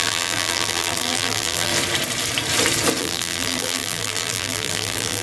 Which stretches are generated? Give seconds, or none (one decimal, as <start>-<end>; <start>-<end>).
0.0-1.7; 3.0-5.2